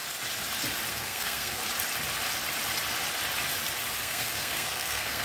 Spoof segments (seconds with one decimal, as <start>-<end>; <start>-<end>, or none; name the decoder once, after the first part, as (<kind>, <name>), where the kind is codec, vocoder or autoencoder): 0.9-1.6 (codec, SNAC); 4.0-5.2

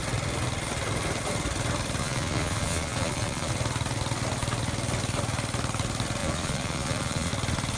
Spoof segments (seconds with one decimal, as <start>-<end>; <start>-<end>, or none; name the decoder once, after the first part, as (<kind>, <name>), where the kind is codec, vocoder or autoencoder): 2.0-3.5 (vocoder, Vocos); 6.2-7.3

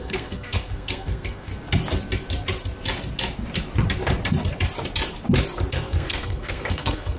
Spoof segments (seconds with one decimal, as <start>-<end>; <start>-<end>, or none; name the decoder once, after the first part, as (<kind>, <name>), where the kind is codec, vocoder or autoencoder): 0.0-1.5 (codec, SNAC); 5.7-7.2

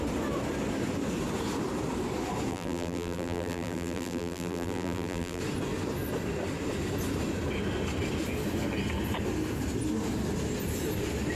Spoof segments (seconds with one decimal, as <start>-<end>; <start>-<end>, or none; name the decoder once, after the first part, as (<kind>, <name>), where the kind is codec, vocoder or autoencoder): 2.5-5.4 (vocoder, BigVGAN v2)